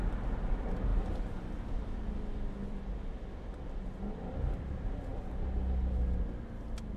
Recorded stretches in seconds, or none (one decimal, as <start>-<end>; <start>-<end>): 0.0-0.9; 2.8-7.0